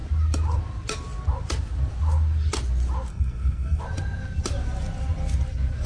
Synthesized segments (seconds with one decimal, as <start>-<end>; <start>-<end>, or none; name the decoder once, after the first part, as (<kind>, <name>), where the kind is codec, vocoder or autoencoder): 3.1-3.8 (codec, SNAC)